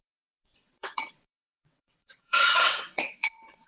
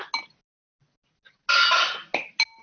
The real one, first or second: second